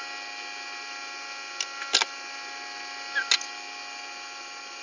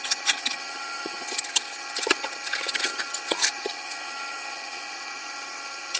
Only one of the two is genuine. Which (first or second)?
first